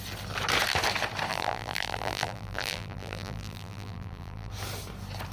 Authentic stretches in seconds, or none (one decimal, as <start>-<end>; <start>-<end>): 0.0-1.3; 4.5-5.3